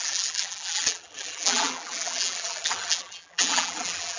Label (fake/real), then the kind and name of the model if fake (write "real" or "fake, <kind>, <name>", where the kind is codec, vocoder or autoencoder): fake, vocoder, BigVGAN v2